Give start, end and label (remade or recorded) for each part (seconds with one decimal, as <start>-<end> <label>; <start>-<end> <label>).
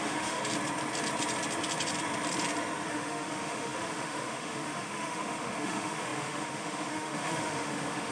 0.0-0.4 remade; 0.4-2.9 recorded; 2.9-8.1 remade